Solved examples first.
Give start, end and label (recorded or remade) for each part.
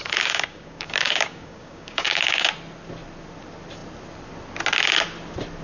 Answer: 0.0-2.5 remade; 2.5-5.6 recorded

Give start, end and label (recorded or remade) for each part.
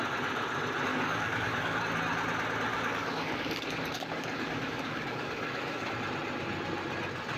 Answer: 0.0-0.9 recorded; 0.9-1.8 remade; 1.8-2.7 recorded; 2.7-5.9 remade; 5.9-7.4 recorded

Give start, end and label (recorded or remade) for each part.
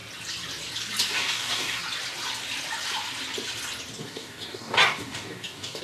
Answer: 0.0-1.1 recorded; 1.1-1.8 remade; 1.8-4.0 recorded; 4.0-5.8 remade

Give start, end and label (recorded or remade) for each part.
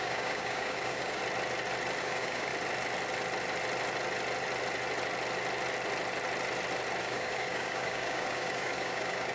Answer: 0.0-1.2 remade; 1.2-2.0 recorded; 2.0-2.5 remade; 2.5-7.0 recorded; 7.0-9.3 remade